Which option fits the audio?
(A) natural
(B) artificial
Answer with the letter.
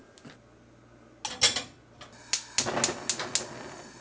A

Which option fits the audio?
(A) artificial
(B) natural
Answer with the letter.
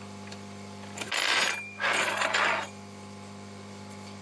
A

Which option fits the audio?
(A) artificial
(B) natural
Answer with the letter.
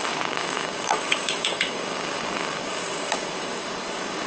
A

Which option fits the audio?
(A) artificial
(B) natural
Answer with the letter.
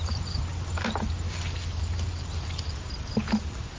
B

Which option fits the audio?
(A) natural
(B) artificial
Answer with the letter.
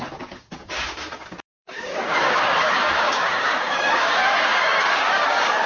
B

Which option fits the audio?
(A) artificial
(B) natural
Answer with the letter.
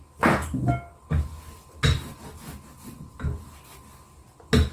B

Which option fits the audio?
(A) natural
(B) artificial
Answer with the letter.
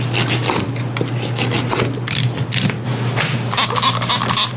A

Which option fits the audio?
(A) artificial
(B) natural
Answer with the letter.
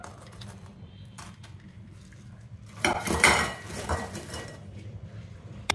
A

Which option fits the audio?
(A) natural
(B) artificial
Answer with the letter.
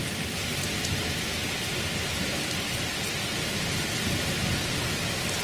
A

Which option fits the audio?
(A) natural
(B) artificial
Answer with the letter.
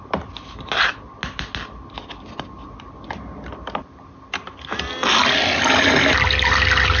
A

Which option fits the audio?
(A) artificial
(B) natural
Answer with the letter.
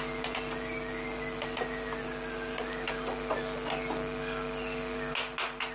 B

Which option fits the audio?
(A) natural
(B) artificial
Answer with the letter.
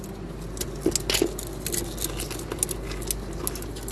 A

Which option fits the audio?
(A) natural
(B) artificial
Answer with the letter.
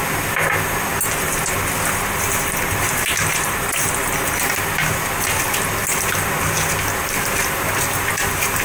A